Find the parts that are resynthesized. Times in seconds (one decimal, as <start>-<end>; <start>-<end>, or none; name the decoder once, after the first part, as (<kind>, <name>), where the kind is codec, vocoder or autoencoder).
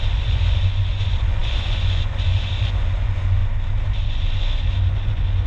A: 0.0-3.4 (vocoder, Vocos); 4.1-5.5